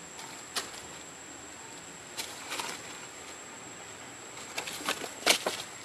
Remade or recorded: recorded